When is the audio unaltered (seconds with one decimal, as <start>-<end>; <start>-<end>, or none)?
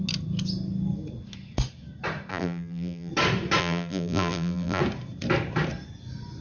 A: 0.0-2.3; 3.1-3.6; 4.8-6.4